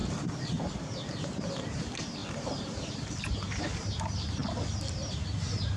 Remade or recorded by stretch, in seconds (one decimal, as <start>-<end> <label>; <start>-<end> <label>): 0.0-1.5 recorded; 1.5-5.8 remade